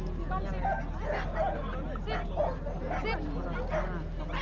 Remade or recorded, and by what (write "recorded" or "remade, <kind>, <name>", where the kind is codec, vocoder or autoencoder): recorded